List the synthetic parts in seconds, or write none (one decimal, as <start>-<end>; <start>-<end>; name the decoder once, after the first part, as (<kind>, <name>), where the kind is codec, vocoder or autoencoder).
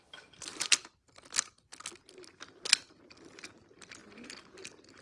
0.0-0.5 (vocoder, BigVGAN v2); 3.5-4.0; 4.5-5.0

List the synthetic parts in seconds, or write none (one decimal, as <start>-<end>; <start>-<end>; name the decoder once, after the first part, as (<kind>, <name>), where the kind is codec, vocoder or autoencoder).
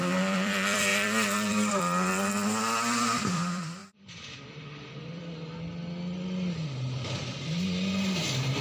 0.0-3.8 (vocoder, BigVGAN v2)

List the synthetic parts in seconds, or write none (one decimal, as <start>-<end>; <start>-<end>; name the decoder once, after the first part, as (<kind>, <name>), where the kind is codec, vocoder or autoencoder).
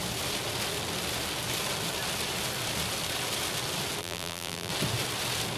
4.0-4.7 (vocoder, BigVGAN v2)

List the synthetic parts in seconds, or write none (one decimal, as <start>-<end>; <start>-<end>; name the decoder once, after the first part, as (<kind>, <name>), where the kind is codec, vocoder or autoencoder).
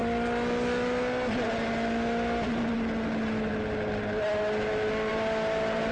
5.1-5.9 (vocoder, BigVGAN v2)